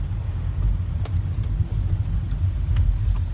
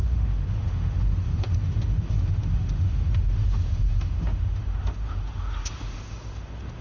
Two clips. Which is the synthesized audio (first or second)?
second